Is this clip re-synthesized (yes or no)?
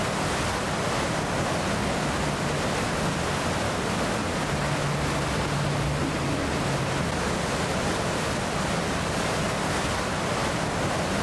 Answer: no